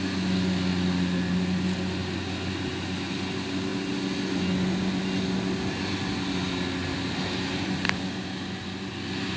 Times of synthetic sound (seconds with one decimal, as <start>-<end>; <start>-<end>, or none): none